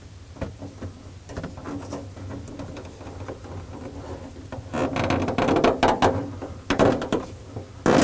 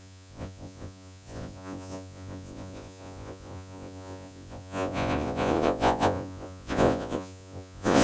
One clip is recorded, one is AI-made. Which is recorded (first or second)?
first